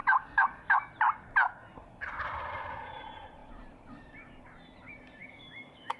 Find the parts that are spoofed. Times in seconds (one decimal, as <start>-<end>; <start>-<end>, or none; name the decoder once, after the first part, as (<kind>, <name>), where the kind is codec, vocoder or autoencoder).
0.0-0.9 (codec, DAC); 5.2-6.0